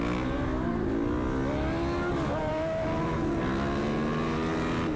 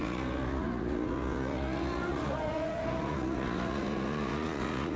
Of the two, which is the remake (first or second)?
second